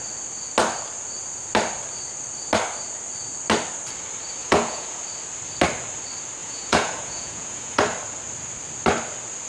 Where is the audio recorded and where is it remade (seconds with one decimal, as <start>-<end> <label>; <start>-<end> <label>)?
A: 0.0-4.4 recorded; 4.4-5.0 remade; 5.0-6.4 recorded; 6.4-7.8 remade; 7.8-9.5 recorded